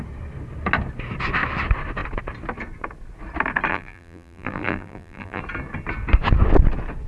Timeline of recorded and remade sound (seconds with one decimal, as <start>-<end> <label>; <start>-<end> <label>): 0.0-3.7 recorded; 3.7-5.4 remade; 5.4-7.1 recorded

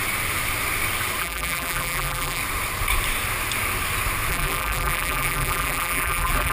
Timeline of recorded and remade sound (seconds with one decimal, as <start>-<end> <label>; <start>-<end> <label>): 0.0-1.2 recorded; 1.2-2.4 remade; 2.4-4.3 recorded; 4.3-6.5 remade

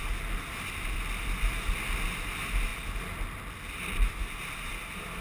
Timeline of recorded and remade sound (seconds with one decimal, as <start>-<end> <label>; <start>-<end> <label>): 0.0-5.2 recorded